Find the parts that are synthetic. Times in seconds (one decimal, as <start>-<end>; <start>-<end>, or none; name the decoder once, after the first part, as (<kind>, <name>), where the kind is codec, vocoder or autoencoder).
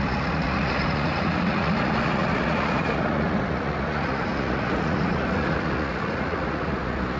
0.0-7.2 (vocoder, Vocos)